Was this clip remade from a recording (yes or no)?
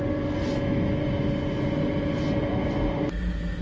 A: no